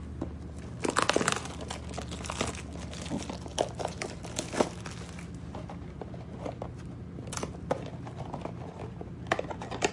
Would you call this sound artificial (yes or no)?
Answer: no